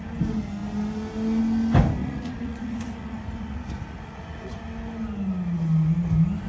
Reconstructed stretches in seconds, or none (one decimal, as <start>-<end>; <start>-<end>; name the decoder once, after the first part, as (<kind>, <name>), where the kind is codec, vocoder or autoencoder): 2.0-4.6 (vocoder, Vocos)